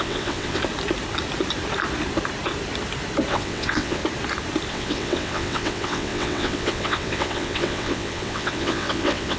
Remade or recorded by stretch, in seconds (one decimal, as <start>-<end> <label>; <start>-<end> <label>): 0.0-0.6 remade; 0.6-3.3 recorded; 3.3-4.0 remade; 4.0-4.7 recorded; 4.7-9.4 remade